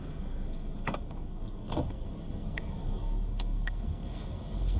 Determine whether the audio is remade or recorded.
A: remade